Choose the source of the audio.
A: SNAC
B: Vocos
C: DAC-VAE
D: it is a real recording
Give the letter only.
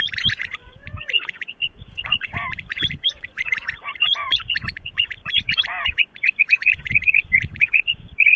B